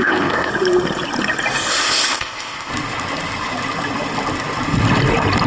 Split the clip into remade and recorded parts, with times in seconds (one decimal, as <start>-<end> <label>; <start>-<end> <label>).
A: 0.0-0.5 remade; 0.5-1.7 recorded; 1.7-2.7 remade; 2.7-5.5 recorded